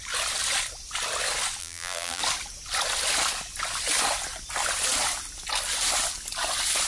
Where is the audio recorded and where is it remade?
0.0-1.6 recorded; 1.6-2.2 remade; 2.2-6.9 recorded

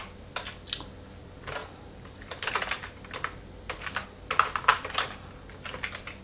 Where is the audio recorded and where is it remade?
0.0-1.6 recorded; 1.6-2.5 remade; 2.5-4.7 recorded; 4.7-5.3 remade; 5.3-6.2 recorded